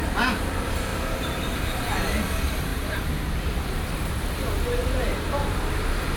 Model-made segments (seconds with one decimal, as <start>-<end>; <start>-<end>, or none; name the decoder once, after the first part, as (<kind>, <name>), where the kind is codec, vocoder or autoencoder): 0.9-1.9 (vocoder, BigVGAN v2); 2.7-5.7